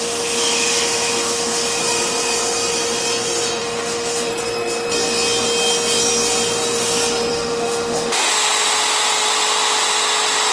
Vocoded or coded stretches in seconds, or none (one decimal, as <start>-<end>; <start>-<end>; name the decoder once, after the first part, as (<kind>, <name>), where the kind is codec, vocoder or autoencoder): 0.0-1.8 (autoencoder, DAC-VAE); 3.6-4.3; 7.3-8.3